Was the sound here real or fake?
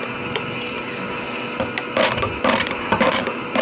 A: real